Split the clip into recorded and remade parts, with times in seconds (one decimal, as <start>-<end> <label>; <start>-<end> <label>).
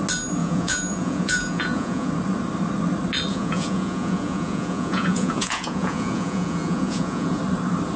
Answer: 0.0-0.4 recorded; 0.4-2.1 remade; 2.1-3.3 recorded; 3.3-7.4 remade; 7.4-8.0 recorded